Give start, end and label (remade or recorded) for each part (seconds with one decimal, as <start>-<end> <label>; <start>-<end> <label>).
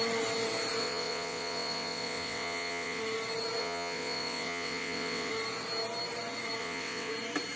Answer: 0.0-0.8 recorded; 0.8-3.0 remade; 3.0-3.6 recorded; 3.6-5.3 remade; 5.3-6.6 recorded; 6.6-7.1 remade; 7.1-7.6 recorded